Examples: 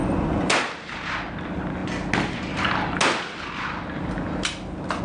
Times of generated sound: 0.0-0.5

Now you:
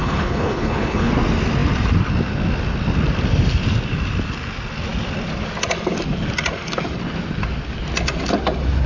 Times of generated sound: 0.0-1.1

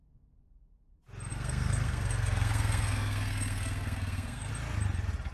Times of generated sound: 1.3-4.5

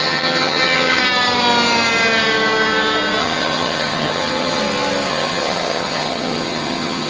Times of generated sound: 0.0-1.0; 3.2-4.6; 5.1-7.1